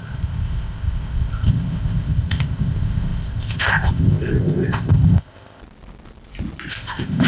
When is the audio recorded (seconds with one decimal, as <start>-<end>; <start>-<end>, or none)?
5.6-6.7